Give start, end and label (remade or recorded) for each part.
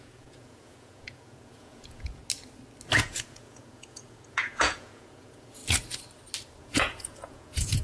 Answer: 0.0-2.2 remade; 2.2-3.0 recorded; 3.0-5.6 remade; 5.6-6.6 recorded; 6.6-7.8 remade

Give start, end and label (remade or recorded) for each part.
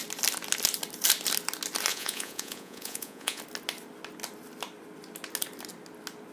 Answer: 0.0-1.9 recorded; 1.9-3.4 remade; 3.4-6.3 recorded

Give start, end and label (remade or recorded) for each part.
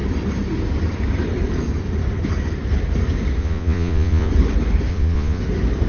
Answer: 0.0-3.4 recorded; 3.4-4.3 remade; 4.3-4.9 recorded; 4.9-5.4 remade; 5.4-5.9 recorded